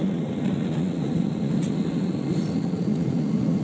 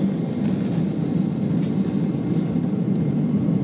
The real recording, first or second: second